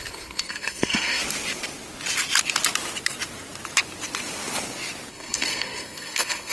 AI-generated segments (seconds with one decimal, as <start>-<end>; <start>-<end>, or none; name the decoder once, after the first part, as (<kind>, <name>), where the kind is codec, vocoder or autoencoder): 0.0-1.2 (codec, SNAC); 5.1-6.5